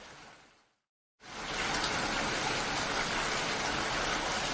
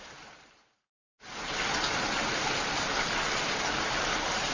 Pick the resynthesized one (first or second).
second